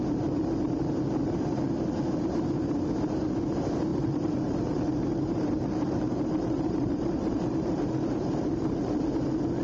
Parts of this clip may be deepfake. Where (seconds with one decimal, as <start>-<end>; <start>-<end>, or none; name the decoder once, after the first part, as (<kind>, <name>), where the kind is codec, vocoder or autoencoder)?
3.9-9.0 (vocoder, BigVGAN v2)